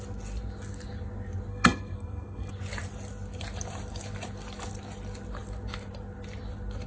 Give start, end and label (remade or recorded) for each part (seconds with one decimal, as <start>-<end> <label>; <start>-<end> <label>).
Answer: 0.0-1.5 recorded; 1.5-2.5 remade; 2.5-6.9 recorded